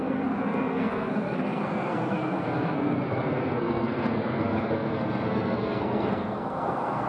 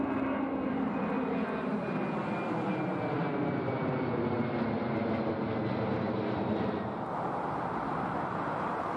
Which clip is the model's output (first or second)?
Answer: first